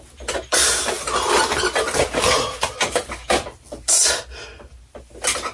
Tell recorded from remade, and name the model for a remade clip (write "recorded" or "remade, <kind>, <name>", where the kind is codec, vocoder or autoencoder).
recorded